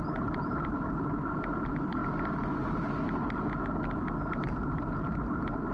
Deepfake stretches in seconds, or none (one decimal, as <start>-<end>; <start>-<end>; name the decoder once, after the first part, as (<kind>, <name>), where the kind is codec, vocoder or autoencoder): 0.0-2.0 (vocoder, BigVGAN v2); 4.3-5.7

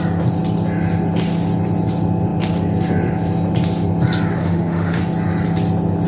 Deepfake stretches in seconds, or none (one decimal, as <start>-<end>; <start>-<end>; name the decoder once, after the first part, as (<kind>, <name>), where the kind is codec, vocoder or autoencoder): 4.4-5.0 (autoencoder, DAC-VAE)

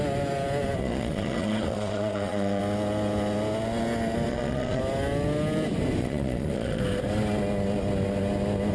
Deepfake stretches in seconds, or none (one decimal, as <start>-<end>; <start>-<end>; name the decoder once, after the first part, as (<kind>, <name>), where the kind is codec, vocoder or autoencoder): 0.8-2.6 (vocoder, Vocos); 4.3-4.8; 6.0-6.8